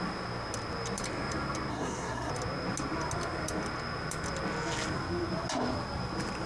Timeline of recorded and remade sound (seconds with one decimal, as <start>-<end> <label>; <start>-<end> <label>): 0.0-1.7 recorded; 1.7-2.3 remade; 2.3-6.5 recorded